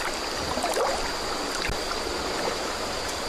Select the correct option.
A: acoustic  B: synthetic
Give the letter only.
A